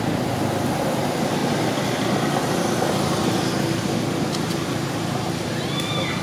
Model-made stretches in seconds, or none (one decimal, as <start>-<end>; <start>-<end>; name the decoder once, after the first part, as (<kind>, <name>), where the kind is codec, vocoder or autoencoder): none